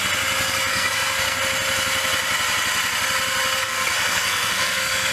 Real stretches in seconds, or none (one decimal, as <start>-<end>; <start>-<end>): 0.0-0.7; 1.4-3.6